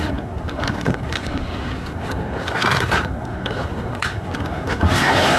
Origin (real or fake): fake